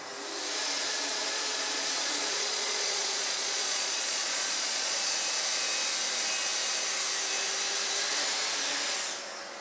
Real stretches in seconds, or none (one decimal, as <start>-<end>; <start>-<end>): 0.0-1.1; 5.1-9.6

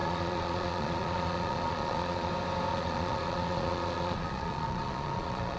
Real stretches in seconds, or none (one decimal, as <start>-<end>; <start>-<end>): 2.3-2.7